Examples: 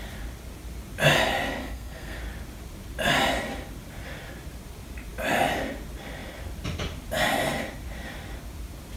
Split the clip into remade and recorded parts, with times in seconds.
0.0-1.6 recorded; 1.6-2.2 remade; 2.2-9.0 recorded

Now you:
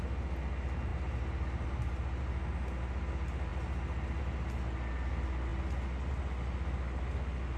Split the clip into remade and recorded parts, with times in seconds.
0.0-7.6 recorded

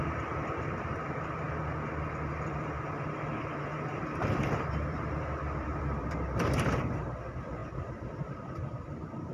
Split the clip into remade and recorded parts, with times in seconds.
0.0-9.3 remade

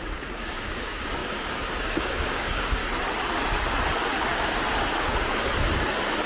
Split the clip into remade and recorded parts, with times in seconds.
0.0-2.8 remade; 2.8-4.4 recorded; 4.4-5.3 remade; 5.3-5.8 recorded; 5.8-6.3 remade

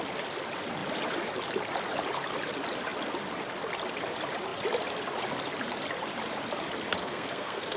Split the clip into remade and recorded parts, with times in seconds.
0.0-7.0 recorded; 7.0-7.8 remade

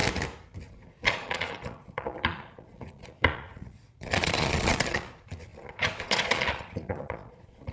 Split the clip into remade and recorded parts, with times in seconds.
0.0-0.6 recorded; 0.6-7.7 remade

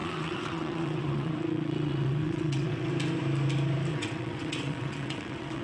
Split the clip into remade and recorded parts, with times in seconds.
0.0-2.9 remade; 2.9-3.9 recorded; 3.9-5.6 remade

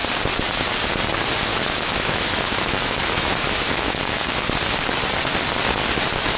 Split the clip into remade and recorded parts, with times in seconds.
0.0-1.5 recorded; 1.5-4.2 remade; 4.2-6.4 recorded